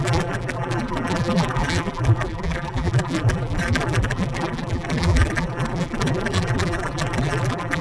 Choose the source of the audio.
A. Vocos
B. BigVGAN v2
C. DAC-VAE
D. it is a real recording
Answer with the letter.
B